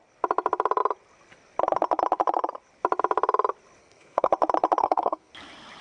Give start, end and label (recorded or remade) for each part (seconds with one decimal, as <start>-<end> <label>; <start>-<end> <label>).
0.0-3.8 recorded; 3.8-4.3 remade; 4.3-4.8 recorded; 4.8-5.3 remade; 5.3-5.8 recorded